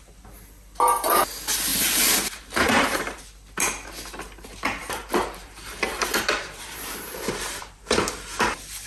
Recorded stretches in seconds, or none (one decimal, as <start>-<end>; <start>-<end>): 0.0-1.7; 3.2-4.8; 7.9-8.9